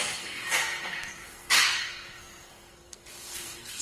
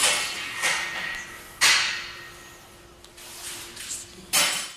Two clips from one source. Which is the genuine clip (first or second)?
second